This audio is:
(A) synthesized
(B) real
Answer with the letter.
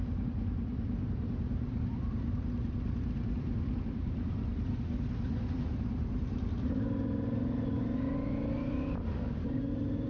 A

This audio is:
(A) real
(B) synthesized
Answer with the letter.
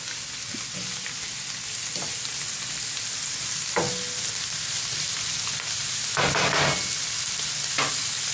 A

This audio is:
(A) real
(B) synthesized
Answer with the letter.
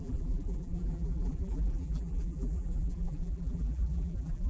B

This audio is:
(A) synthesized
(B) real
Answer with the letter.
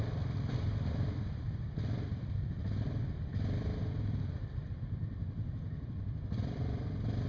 A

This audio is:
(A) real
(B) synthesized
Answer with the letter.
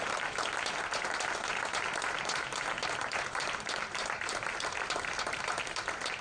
B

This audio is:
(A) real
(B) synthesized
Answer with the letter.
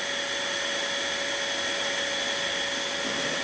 A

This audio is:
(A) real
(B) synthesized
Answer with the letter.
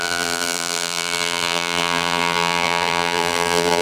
B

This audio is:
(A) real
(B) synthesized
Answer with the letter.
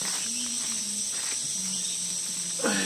A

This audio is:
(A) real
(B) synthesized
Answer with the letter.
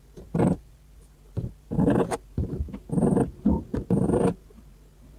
B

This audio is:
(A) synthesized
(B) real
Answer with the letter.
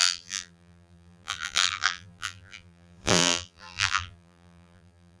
A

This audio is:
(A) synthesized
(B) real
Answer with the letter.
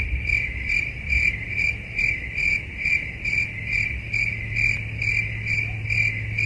B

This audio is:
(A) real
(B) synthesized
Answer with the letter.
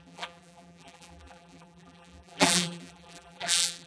B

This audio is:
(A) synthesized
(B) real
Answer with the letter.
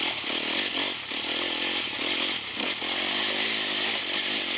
B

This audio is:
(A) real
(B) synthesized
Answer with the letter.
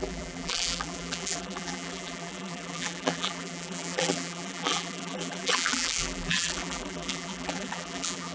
B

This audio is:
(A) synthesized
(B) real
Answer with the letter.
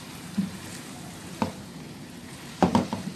A